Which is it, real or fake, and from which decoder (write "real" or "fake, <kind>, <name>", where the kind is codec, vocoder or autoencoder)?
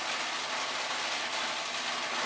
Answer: real